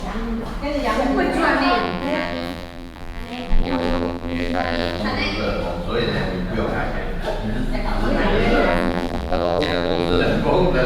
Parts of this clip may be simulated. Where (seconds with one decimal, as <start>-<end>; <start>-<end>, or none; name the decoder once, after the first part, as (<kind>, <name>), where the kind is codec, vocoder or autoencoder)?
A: 1.8-5.0 (vocoder, BigVGAN v2); 8.7-10.2

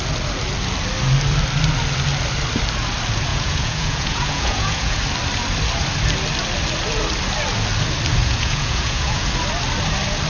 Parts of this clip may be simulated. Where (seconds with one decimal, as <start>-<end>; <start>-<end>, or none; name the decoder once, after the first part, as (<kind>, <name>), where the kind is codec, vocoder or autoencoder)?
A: 3.3-5.0 (vocoder, Vocos); 8.2-9.3